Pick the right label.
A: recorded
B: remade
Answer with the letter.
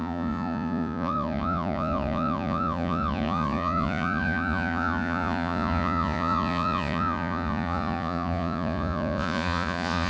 B